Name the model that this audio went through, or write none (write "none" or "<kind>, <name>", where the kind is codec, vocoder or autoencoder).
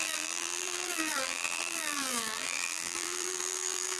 vocoder, BigVGAN v2